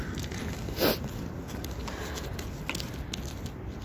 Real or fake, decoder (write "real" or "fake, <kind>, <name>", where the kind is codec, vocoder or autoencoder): real